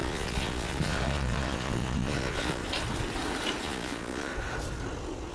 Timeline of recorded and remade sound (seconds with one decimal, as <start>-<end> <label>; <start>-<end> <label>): 0.0-2.6 remade; 2.6-3.6 recorded; 3.6-4.3 remade; 4.3-5.3 recorded